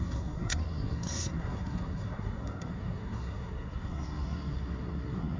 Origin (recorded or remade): remade